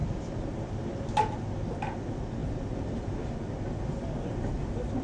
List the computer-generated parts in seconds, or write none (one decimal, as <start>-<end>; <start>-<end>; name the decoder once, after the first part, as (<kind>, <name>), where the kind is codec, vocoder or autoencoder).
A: none